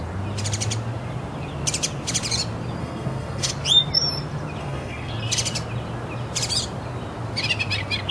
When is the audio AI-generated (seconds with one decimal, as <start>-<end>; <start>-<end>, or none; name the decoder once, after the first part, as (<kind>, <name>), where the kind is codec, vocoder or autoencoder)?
2.8-3.5 (codec, SNAC); 4.6-5.1